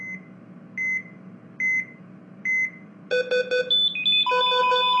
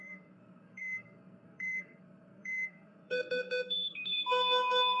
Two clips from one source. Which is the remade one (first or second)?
second